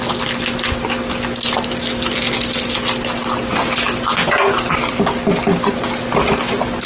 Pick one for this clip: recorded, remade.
recorded